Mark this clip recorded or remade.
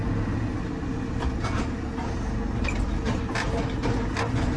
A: recorded